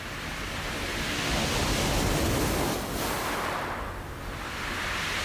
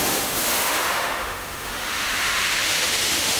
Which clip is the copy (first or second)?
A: second